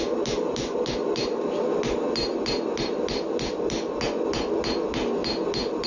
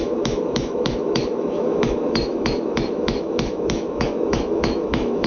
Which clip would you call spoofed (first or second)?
second